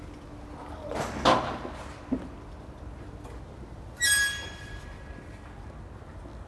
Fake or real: real